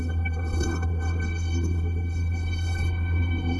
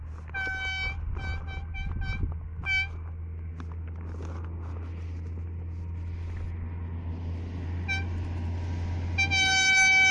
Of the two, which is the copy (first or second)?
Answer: first